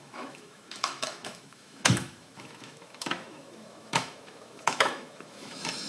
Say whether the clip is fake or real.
fake